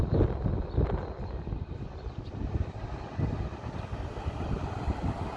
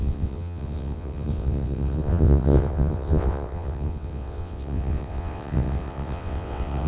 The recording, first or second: first